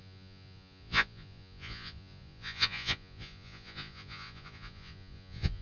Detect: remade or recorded remade